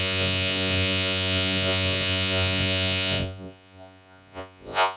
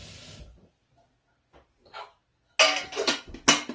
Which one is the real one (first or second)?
second